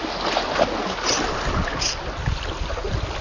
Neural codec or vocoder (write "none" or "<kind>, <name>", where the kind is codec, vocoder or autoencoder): none